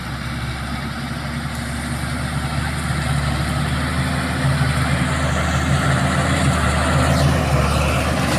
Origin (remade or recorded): recorded